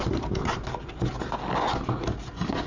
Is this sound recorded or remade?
recorded